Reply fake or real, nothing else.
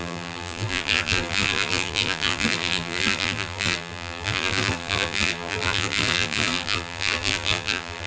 fake